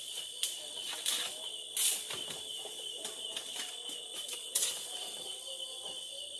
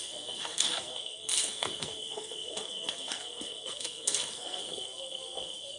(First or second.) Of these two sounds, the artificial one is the second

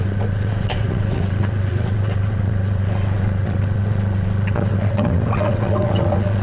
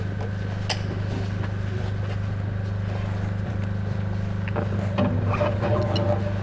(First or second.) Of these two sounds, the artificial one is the first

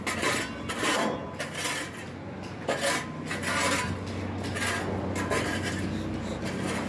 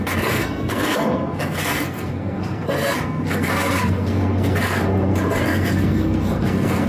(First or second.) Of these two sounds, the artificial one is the second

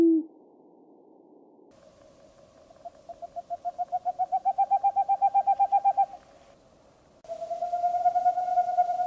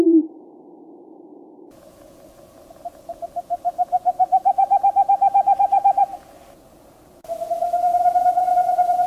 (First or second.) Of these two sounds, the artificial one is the second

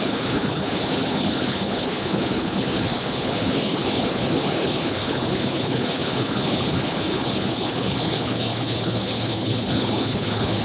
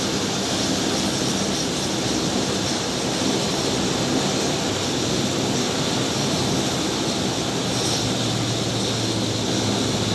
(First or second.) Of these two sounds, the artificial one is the first